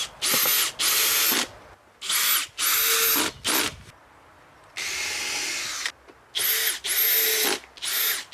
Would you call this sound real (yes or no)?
yes